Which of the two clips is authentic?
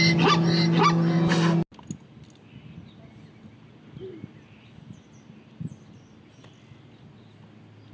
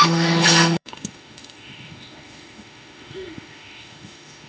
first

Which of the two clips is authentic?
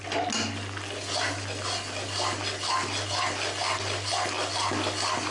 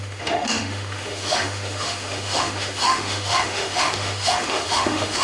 first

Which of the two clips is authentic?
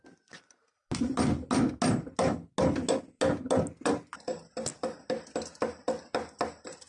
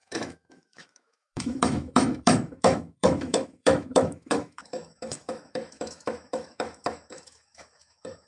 first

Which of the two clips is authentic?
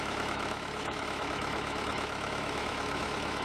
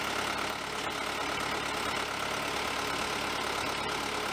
second